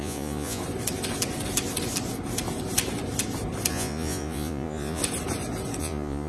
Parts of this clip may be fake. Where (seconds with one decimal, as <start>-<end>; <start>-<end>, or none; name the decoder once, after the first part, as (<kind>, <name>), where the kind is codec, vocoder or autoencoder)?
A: 0.0-0.6 (vocoder, Vocos); 3.7-5.0; 5.8-6.3

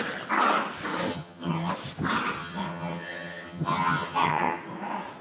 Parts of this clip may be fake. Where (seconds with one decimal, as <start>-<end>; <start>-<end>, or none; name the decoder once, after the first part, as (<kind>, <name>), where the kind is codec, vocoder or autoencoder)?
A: 1.1-1.7 (vocoder, HiFi-GAN); 2.4-4.6

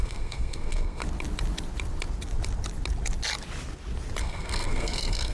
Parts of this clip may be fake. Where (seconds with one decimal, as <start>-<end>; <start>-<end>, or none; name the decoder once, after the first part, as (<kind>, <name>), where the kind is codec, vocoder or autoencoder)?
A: 0.0-1.0 (codec, SNAC); 4.2-5.3

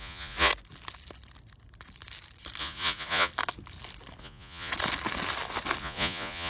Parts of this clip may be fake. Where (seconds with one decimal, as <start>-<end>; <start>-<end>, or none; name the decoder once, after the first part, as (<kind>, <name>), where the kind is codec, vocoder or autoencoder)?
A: 0.0-0.5 (vocoder, Vocos); 2.6-3.3; 4.2-4.7; 5.8-6.5

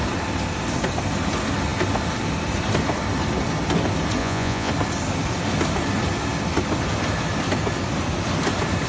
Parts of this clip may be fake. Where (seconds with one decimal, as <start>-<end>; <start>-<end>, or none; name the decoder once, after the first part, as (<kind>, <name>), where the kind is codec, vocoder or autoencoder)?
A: 4.2-4.7 (vocoder, Vocos)